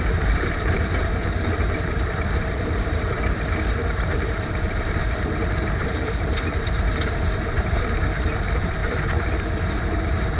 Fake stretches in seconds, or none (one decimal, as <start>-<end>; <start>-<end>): 0.0-8.8; 9.7-10.4